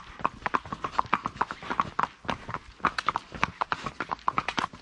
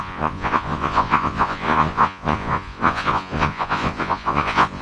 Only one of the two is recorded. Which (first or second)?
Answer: first